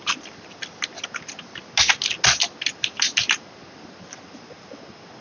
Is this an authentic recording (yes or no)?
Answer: yes